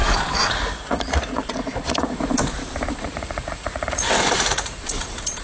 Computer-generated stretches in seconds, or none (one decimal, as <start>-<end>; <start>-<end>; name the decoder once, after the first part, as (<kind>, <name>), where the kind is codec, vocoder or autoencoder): 0.5-2.3 (vocoder, Vocos); 3.0-5.4